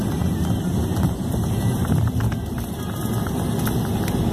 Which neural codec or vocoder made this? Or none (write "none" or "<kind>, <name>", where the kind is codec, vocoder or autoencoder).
none